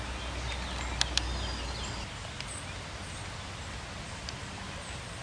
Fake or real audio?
real